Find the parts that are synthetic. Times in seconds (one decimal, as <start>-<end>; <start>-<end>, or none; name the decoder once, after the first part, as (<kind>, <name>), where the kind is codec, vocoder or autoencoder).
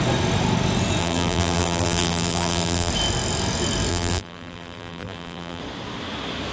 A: 1.0-2.9 (vocoder, BigVGAN v2); 3.9-5.6